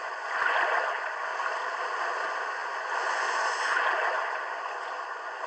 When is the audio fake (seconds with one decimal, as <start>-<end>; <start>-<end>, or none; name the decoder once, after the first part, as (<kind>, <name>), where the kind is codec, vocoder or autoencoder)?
0.0-1.3 (vocoder, Vocos); 2.1-5.5